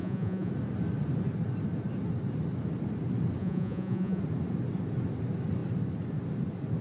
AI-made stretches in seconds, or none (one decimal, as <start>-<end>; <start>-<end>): 0.0-0.5; 3.4-4.2